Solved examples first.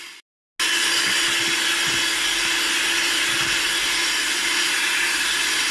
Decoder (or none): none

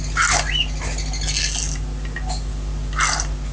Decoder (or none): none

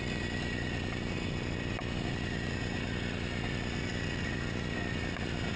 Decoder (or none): none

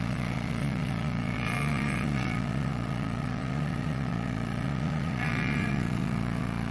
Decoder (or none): vocoder, Vocos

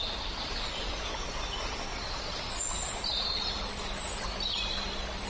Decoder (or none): none